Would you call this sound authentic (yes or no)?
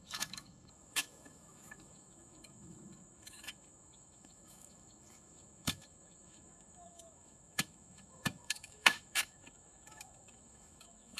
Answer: no